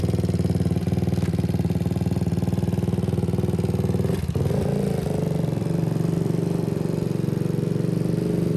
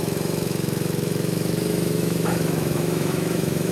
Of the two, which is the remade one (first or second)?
second